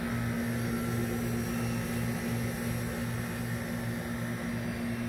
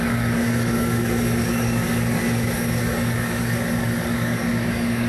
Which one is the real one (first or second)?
first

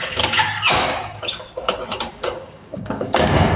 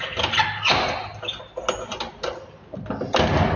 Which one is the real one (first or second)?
second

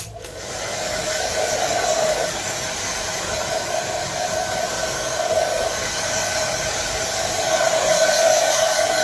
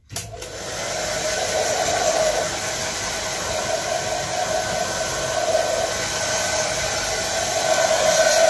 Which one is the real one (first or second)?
second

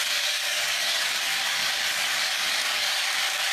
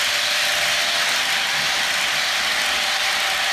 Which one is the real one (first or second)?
second